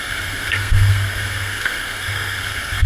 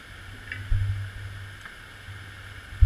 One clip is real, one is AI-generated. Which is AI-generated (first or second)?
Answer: first